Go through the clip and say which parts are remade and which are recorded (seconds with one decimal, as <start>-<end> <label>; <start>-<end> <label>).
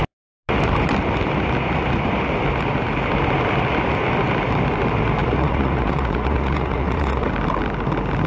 0.0-5.2 recorded; 5.2-7.3 remade; 7.3-8.3 recorded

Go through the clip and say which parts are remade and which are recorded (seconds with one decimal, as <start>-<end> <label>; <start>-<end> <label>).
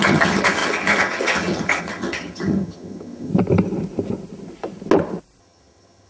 0.0-3.3 remade; 3.3-5.4 recorded; 5.4-6.1 remade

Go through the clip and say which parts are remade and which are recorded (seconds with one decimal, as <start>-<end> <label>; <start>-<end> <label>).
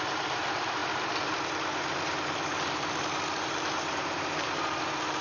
0.0-5.2 remade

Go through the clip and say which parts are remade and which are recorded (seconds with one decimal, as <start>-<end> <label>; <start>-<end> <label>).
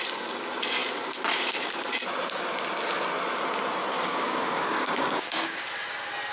0.0-3.8 recorded; 3.8-5.6 remade; 5.6-6.3 recorded